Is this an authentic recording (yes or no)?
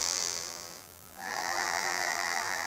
no